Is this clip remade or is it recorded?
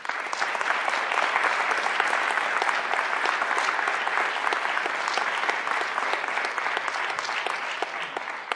recorded